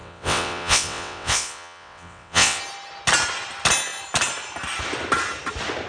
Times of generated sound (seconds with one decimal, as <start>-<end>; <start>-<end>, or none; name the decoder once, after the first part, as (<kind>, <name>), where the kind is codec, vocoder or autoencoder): 0.0-2.6 (vocoder, WaveNeXt)